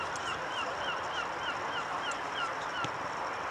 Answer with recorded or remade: recorded